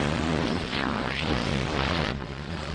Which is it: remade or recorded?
remade